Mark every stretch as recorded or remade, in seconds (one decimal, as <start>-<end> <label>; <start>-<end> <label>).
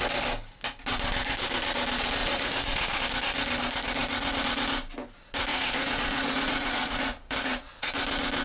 0.0-2.2 recorded; 2.2-3.0 remade; 3.0-5.5 recorded; 5.5-7.9 remade; 7.9-8.4 recorded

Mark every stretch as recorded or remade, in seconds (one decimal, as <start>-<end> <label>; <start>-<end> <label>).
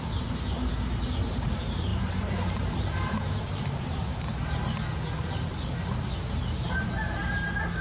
0.0-4.1 remade; 4.1-5.3 recorded; 5.3-7.8 remade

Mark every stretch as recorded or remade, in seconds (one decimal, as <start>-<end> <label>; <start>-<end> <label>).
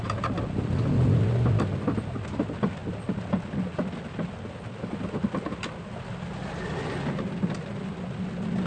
0.0-8.7 recorded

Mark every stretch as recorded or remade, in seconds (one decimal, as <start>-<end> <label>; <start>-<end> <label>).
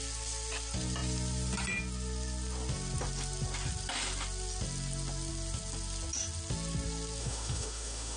0.0-7.2 recorded; 7.2-8.2 remade